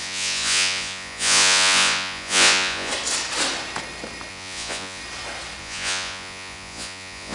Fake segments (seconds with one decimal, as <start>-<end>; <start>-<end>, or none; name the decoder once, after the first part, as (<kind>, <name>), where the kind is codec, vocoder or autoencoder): 0.0-2.9 (vocoder, Vocos); 4.3-5.0; 5.6-7.3